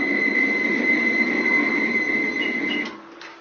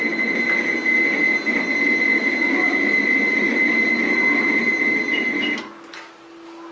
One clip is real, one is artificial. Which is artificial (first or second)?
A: first